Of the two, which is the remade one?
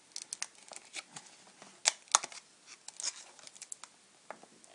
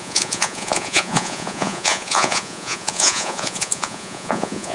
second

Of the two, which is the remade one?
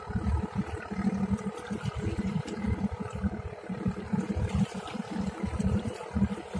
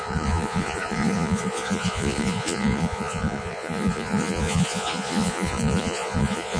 second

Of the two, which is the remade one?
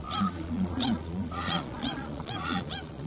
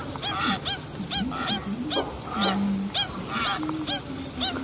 first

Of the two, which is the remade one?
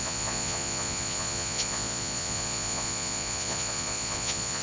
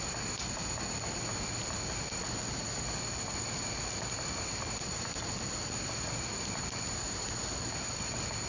first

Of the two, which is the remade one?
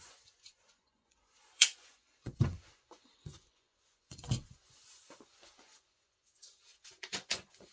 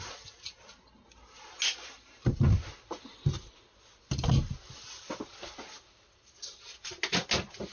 first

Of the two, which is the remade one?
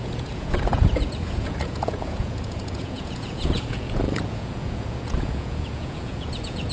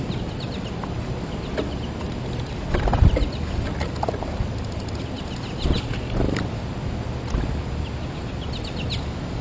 first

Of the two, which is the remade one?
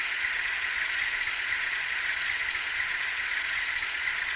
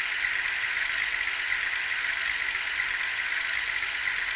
first